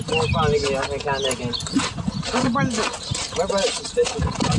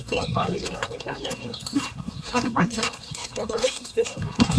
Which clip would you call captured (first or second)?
first